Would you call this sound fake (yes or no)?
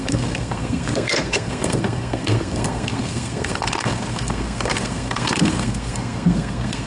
yes